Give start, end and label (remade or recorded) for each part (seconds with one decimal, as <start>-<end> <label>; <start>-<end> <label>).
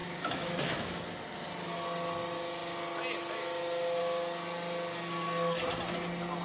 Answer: 0.0-1.0 remade; 1.0-6.4 recorded